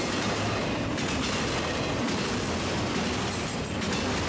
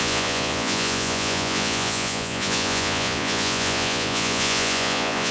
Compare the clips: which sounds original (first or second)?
first